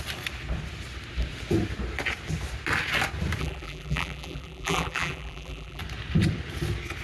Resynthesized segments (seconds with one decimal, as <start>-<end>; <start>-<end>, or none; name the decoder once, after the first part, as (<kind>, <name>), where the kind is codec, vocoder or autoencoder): 3.4-5.8 (vocoder, BigVGAN v2)